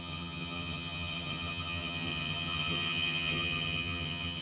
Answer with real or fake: fake